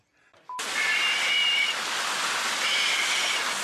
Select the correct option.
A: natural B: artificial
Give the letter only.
A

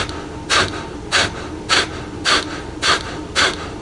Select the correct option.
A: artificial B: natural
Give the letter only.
B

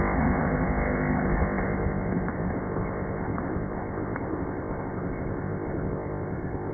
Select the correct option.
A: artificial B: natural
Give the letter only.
A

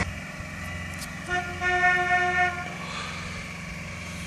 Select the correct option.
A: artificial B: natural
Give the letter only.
B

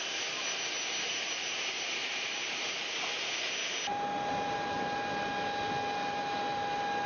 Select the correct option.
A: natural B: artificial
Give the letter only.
A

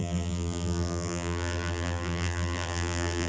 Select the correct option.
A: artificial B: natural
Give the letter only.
A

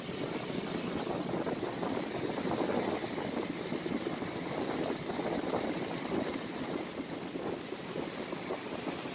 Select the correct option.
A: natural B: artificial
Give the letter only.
A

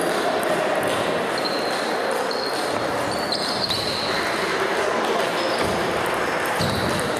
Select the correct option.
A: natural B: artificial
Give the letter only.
A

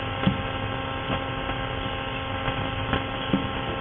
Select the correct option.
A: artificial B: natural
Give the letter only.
B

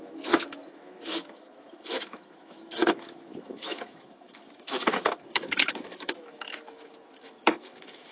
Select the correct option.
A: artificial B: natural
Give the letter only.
A